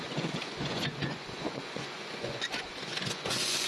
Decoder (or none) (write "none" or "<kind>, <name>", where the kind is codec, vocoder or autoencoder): vocoder, Vocos